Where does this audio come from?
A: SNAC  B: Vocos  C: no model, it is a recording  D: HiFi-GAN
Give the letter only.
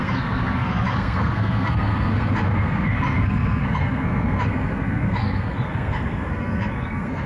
A